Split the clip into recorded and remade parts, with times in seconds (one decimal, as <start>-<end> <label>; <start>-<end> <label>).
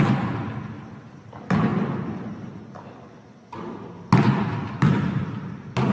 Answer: 0.0-5.9 recorded